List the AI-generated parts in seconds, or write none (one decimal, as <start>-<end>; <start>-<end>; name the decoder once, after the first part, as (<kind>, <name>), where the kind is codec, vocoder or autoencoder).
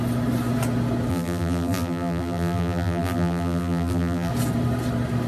1.1-4.3 (vocoder, BigVGAN v2)